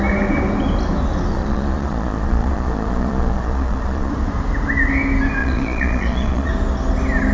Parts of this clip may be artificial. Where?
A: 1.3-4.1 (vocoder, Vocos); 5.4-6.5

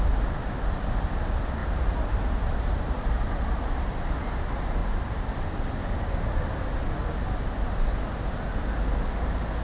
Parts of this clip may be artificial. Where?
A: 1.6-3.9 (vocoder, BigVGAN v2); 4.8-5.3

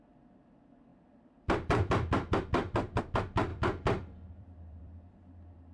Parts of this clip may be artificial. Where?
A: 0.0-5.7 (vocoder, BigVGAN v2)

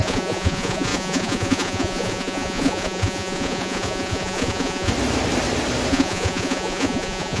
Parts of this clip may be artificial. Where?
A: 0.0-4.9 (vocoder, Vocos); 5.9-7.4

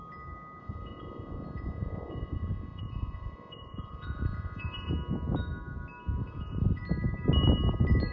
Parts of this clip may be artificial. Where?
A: 0.6-4.9 (vocoder, Vocos); 6.2-6.8

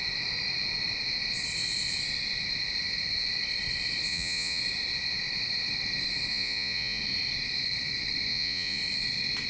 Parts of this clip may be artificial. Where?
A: 4.1-4.6 (vocoder, Vocos); 6.3-7.0; 8.3-8.8

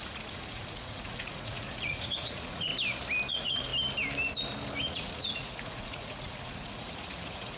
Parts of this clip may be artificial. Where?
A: 0.0-2.7 (vocoder, Vocos); 3.3-3.7; 4.8-7.6

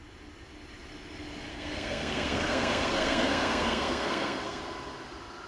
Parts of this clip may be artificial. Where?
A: 1.5-4.6 (codec, SNAC)